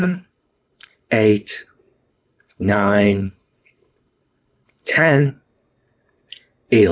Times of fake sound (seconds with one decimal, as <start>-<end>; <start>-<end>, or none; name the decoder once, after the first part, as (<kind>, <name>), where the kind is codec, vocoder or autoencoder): 0.0-1.1 (codec, HILCodec); 2.1-5.3